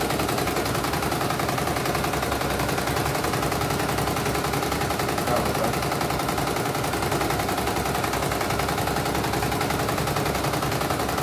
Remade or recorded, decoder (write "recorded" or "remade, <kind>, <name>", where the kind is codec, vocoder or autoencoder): recorded